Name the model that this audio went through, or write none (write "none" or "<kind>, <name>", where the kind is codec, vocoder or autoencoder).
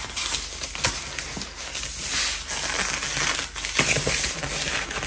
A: none